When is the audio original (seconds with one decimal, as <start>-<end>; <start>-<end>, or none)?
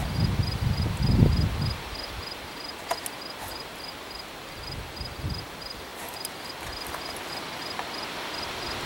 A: 0.0-8.9